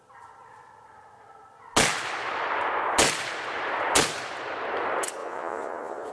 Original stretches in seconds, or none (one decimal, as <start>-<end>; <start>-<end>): 0.0-5.2